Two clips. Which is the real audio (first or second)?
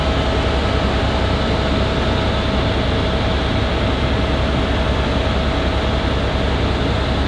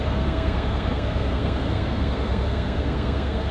first